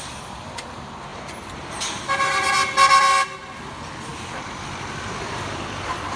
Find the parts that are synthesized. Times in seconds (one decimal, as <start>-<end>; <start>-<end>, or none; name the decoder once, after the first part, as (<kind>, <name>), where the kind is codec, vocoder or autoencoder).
1.1-1.8 (vocoder, BigVGAN v2); 4.1-6.2